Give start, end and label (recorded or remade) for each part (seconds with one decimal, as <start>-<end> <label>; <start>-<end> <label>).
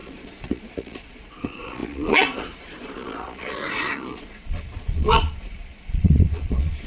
0.0-6.9 remade